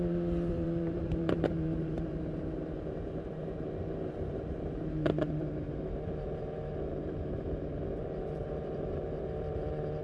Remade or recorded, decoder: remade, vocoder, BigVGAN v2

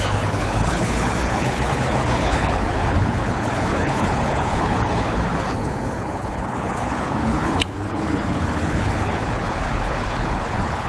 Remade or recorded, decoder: remade, codec, HILCodec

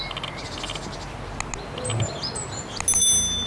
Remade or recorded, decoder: recorded